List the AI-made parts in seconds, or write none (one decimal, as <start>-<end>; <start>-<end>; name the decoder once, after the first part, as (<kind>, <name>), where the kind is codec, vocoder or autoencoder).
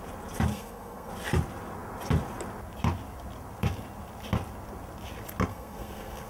0.5-1.1 (codec, SNAC); 5.5-6.3